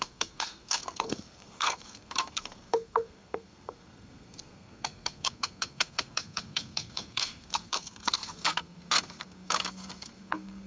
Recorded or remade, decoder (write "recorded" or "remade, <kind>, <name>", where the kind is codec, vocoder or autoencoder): remade, codec, SNAC